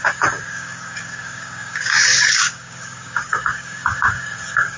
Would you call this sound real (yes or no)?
no